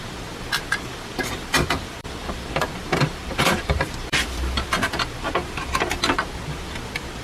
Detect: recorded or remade remade